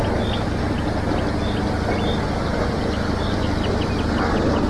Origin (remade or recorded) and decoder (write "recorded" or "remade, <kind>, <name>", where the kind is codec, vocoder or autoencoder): recorded